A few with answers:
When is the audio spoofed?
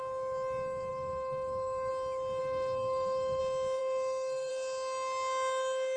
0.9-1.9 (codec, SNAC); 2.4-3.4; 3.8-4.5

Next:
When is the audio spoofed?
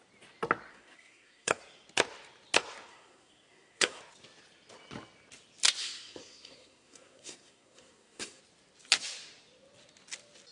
0.7-1.6 (codec, SNAC); 2.9-4.0; 5.8-8.4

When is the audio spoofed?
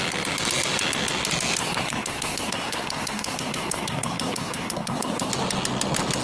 1.6-5.3 (codec, SNAC)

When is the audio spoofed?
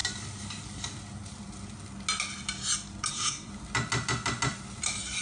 3.1-3.5 (codec, SNAC)